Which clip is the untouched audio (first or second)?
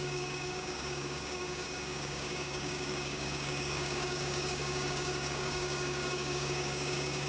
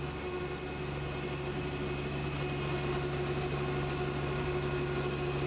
second